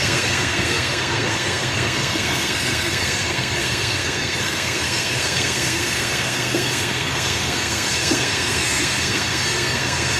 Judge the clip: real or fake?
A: fake